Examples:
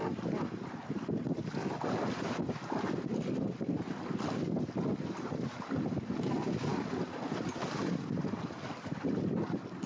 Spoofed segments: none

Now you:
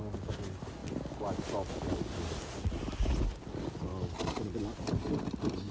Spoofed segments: none

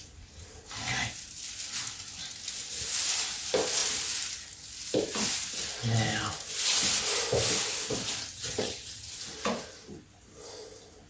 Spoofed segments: 8.3-9.1 (vocoder, HiFi-GAN)

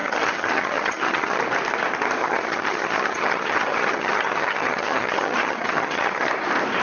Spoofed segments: 0.0-1.4 (vocoder, HiFi-GAN); 2.2-6.3

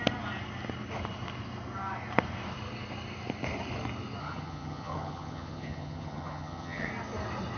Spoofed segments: 4.2-6.9 (vocoder, HiFi-GAN)

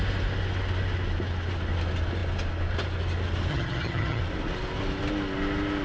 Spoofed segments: 3.5-4.2 (vocoder, HiFi-GAN)

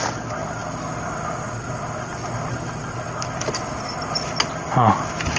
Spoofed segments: none

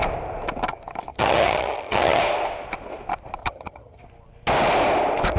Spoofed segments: 1.1-2.2 (vocoder, HiFi-GAN); 3.4-4.0